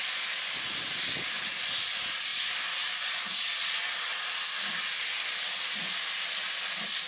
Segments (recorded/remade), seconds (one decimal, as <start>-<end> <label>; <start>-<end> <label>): 0.0-2.3 recorded; 2.3-5.7 remade; 5.7-7.1 recorded